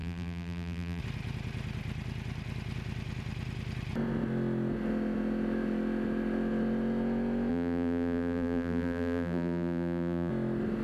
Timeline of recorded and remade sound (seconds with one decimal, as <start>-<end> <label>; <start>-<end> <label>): 0.0-1.0 remade; 1.0-7.5 recorded; 7.5-10.3 remade; 10.3-10.8 recorded